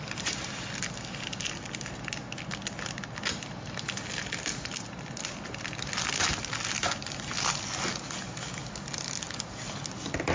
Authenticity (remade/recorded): recorded